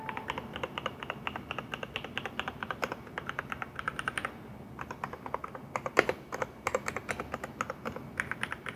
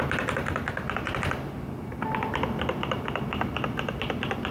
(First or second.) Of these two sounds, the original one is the first